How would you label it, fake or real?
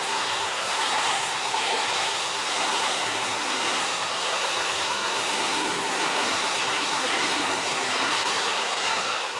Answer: fake